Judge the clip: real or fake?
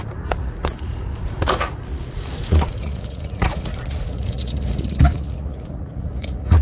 fake